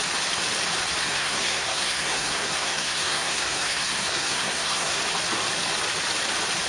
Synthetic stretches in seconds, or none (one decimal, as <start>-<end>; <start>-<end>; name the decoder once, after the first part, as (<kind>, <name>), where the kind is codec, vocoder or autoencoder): 1.0-5.0 (codec, SNAC)